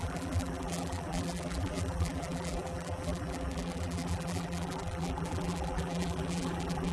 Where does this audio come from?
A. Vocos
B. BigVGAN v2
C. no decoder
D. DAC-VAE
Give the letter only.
B